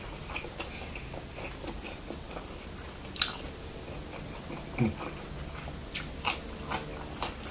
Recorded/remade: recorded